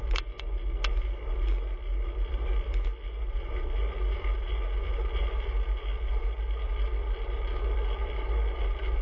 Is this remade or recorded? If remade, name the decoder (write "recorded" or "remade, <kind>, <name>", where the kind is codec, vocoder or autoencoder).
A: recorded